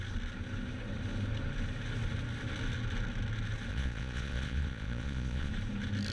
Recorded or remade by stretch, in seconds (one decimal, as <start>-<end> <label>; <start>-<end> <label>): 0.0-3.7 recorded; 3.7-5.5 remade; 5.5-6.1 recorded